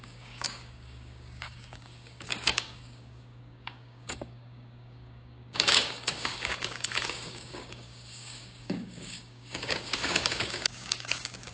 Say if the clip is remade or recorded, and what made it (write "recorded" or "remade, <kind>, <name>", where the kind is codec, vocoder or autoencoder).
remade, codec, DAC